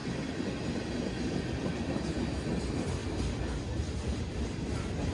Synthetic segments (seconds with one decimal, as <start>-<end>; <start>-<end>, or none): none